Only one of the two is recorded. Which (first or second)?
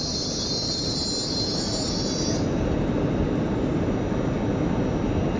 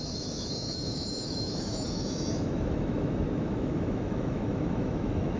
first